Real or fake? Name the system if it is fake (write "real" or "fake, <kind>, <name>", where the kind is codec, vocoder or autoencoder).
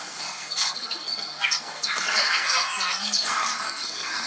fake, codec, SNAC